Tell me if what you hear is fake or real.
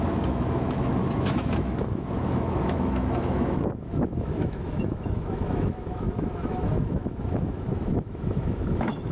fake